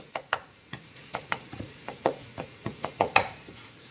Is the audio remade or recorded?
remade